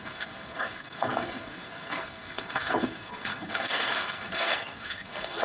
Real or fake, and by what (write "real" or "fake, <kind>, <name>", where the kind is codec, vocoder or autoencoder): fake, codec, SNAC